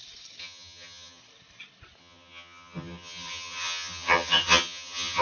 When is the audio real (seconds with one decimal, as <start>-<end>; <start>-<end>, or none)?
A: 0.0-0.4; 1.2-2.0